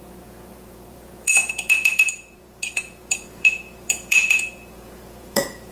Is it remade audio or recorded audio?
remade